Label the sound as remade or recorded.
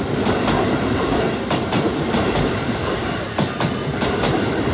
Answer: recorded